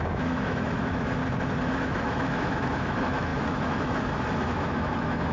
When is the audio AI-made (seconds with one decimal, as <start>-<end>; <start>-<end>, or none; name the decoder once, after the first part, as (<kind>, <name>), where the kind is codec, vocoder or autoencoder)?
0.0-1.2 (autoencoder, DAC-VAE); 1.7-5.3